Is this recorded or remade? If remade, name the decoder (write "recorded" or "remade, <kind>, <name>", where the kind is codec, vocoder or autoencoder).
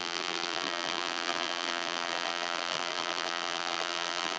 remade, vocoder, BigVGAN v2